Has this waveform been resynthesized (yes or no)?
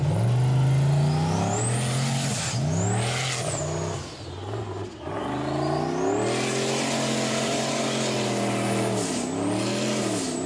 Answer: no